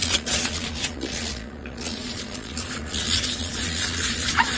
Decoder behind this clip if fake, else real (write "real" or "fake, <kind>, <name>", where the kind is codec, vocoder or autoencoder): fake, vocoder, Vocos